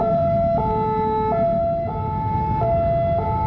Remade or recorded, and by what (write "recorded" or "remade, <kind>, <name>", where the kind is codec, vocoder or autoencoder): recorded